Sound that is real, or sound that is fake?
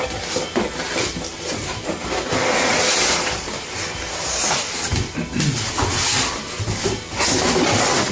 real